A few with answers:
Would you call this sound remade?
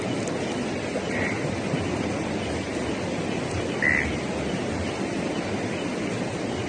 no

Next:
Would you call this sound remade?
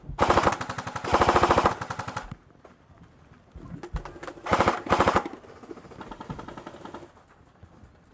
no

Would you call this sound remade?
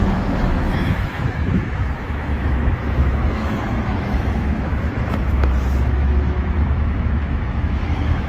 yes